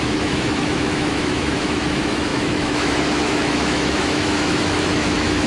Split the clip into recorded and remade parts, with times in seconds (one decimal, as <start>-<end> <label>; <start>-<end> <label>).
0.0-5.5 remade